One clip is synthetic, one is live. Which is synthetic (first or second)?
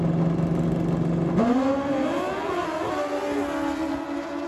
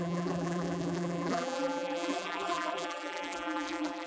second